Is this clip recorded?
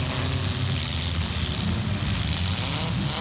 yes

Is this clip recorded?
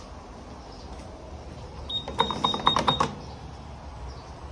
yes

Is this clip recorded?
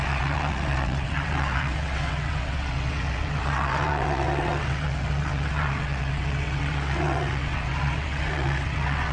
no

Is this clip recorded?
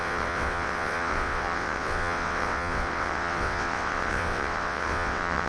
no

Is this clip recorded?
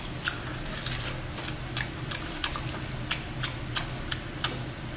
yes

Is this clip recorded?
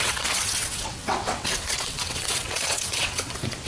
no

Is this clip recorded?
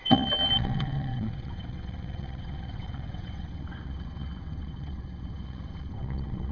no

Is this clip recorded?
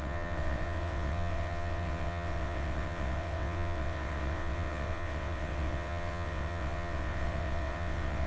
no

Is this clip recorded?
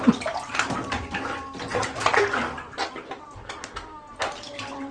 yes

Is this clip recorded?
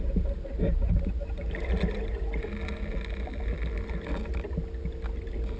yes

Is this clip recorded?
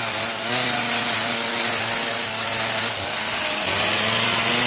yes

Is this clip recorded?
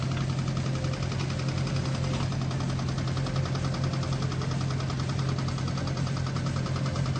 yes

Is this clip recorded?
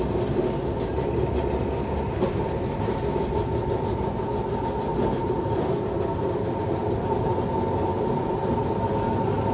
yes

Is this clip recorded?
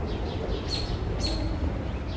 yes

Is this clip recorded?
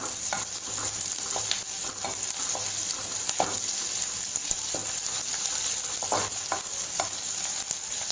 yes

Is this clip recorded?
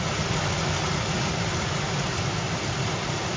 yes